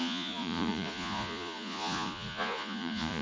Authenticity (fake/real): fake